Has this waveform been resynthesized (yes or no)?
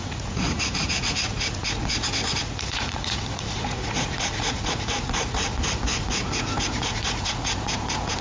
yes